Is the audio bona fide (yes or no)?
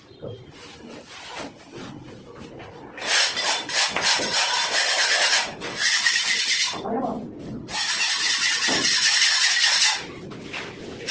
yes